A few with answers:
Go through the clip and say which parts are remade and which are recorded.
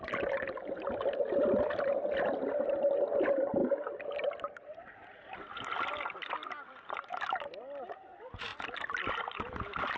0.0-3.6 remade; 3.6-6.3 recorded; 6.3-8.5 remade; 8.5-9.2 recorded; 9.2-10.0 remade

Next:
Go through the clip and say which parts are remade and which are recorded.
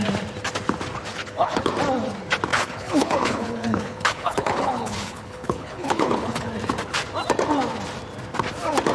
0.0-1.1 recorded; 1.1-1.7 remade; 1.7-2.5 recorded; 2.5-6.5 remade; 6.5-8.9 recorded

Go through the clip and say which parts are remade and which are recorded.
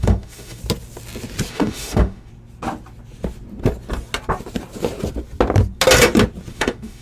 0.0-0.6 remade; 0.6-1.5 recorded; 1.5-2.3 remade; 2.3-6.5 recorded; 6.5-7.0 remade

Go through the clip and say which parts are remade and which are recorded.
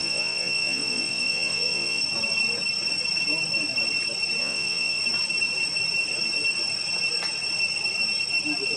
0.0-2.0 remade; 2.0-4.4 recorded; 4.4-5.0 remade; 5.0-8.8 recorded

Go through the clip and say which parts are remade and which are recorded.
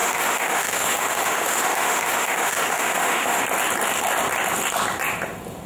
0.0-3.4 remade; 3.4-5.7 recorded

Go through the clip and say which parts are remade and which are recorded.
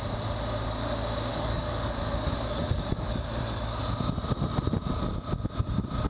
0.0-1.3 recorded; 1.3-3.8 remade; 3.8-6.1 recorded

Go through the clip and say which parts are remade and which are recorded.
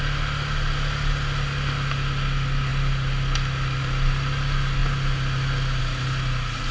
0.0-6.7 recorded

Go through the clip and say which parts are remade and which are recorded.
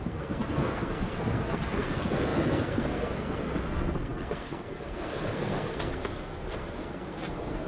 0.0-7.7 remade